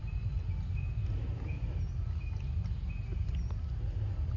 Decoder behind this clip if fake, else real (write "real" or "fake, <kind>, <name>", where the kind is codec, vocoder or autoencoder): real